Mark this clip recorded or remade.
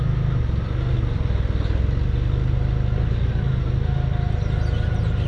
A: recorded